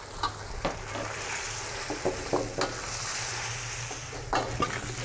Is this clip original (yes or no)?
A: yes